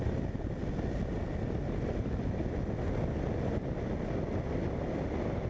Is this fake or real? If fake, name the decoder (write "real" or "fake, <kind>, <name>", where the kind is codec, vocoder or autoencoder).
real